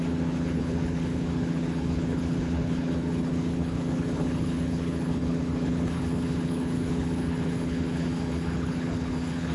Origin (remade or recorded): remade